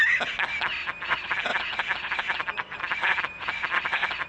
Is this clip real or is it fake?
real